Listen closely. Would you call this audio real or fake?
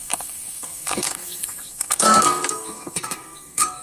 fake